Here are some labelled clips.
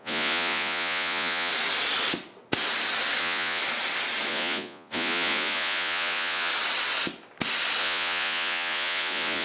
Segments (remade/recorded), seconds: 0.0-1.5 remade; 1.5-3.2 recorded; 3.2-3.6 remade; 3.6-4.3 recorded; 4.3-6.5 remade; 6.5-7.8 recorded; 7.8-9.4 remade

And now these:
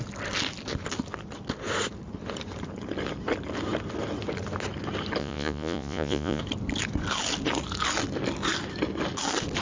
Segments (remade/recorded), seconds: 0.0-5.2 recorded; 5.2-6.4 remade; 6.4-9.6 recorded

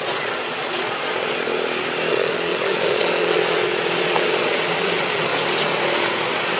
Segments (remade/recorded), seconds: 0.0-1.5 remade; 1.5-2.1 recorded; 2.1-5.3 remade; 5.3-6.0 recorded; 6.0-6.6 remade

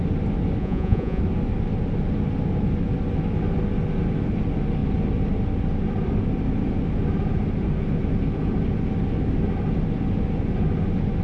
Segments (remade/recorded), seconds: 0.0-0.6 recorded; 0.6-1.2 remade; 1.2-11.2 recorded

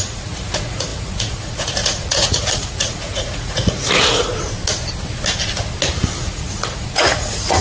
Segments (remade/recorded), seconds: 0.0-4.3 remade; 4.3-6.3 recorded; 6.3-7.6 remade

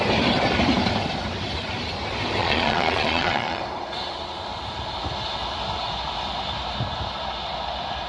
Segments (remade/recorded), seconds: 0.0-2.4 recorded; 2.4-3.6 remade; 3.6-8.1 recorded